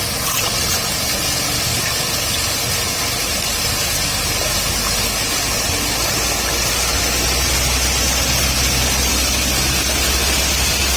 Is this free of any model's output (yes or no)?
yes